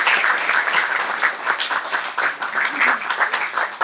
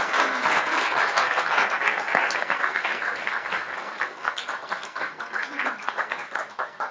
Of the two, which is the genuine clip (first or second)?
first